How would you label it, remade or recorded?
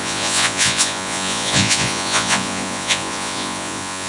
remade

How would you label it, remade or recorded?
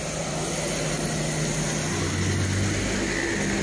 recorded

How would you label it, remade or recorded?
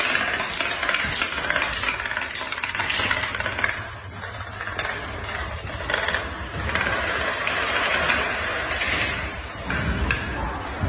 recorded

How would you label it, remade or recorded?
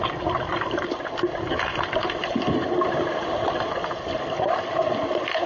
recorded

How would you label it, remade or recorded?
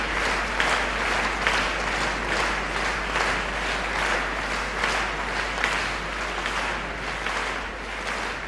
recorded